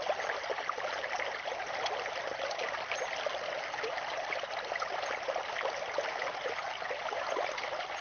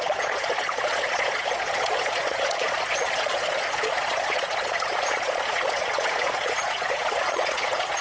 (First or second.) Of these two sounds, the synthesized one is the second